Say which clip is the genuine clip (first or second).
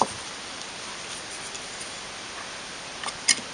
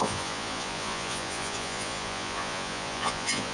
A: first